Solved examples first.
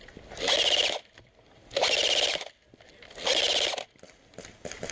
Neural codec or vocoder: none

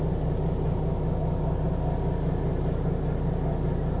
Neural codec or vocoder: none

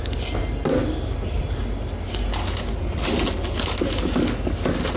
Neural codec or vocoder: none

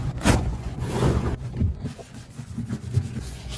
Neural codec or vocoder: vocoder, Vocos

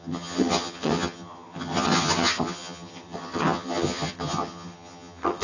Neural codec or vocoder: vocoder, HiFi-GAN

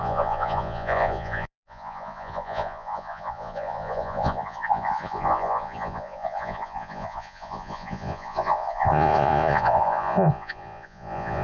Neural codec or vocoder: vocoder, Vocos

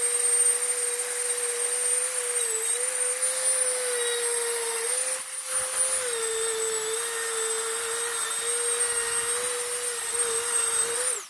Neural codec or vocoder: none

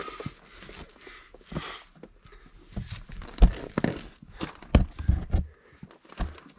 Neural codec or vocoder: none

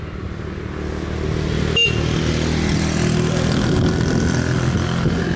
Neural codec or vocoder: none